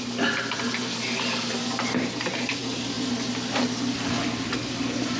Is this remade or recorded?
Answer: recorded